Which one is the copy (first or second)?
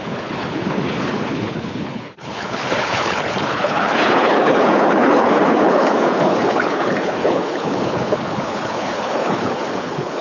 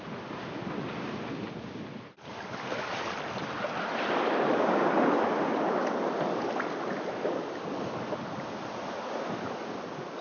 first